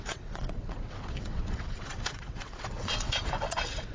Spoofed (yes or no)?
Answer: yes